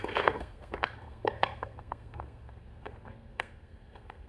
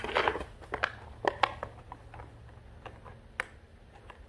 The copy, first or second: first